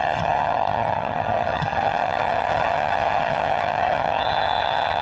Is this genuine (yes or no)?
no